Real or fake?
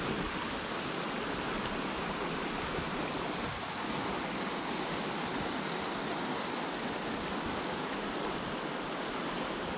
real